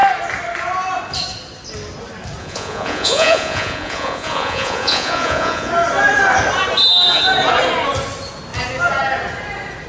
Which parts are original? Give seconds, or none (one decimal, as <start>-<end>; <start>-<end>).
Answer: 0.0-2.4; 5.7-9.9